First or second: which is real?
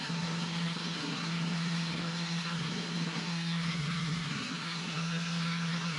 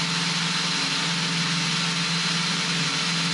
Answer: second